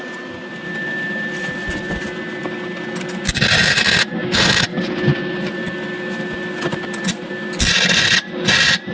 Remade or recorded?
recorded